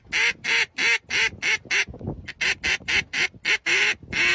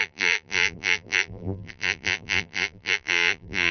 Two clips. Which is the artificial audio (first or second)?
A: second